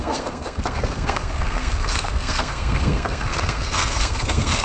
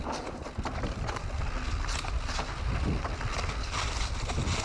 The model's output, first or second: first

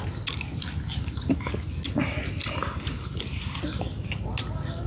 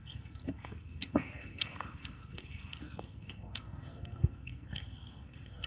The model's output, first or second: second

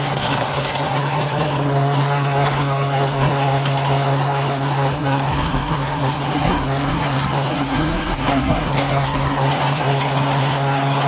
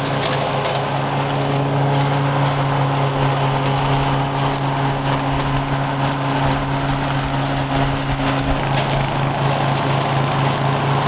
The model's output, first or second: first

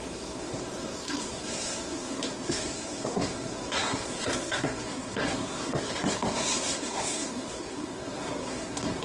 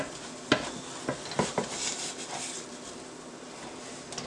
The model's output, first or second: first